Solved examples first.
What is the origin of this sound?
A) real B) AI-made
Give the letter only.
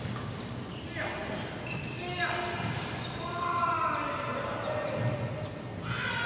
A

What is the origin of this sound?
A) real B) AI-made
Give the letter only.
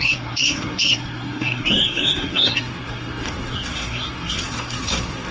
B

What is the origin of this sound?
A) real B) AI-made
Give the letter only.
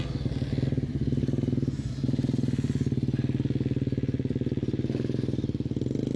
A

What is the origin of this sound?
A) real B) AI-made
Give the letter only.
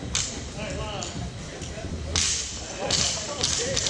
A